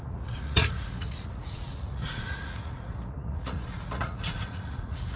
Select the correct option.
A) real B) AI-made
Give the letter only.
B